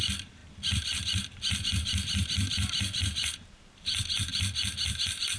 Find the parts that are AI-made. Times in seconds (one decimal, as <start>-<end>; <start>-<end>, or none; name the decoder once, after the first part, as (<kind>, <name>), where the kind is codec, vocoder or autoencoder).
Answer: none